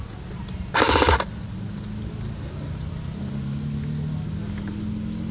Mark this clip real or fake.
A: real